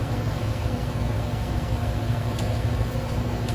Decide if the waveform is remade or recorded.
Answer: remade